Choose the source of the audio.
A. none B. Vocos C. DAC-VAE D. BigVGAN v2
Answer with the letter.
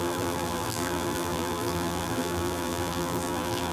D